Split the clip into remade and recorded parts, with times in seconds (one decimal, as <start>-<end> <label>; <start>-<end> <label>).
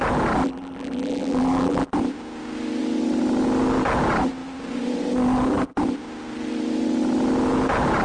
0.0-0.4 recorded; 0.4-1.9 remade; 1.9-8.0 recorded